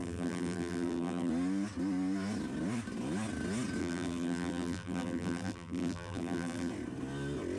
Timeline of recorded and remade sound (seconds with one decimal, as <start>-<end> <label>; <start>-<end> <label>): 0.0-1.3 remade; 1.3-3.8 recorded; 3.8-6.7 remade; 6.7-7.6 recorded